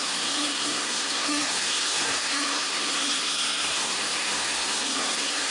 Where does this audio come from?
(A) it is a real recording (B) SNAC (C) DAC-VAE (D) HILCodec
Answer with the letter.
B